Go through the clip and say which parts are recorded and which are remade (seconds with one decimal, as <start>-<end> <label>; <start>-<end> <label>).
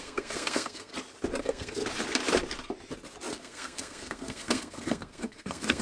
0.0-0.9 remade; 0.9-1.4 recorded; 1.4-1.8 remade; 1.8-3.3 recorded; 3.3-5.8 remade